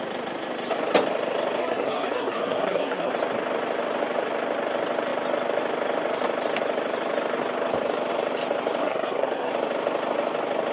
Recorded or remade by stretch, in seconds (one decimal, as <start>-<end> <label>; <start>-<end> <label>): 0.0-1.6 recorded; 1.6-3.1 remade; 3.1-8.8 recorded; 8.8-9.5 remade; 9.5-10.7 recorded